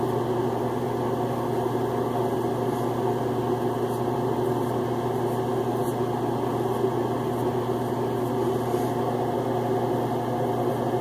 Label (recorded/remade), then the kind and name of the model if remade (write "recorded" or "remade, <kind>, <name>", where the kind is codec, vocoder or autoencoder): recorded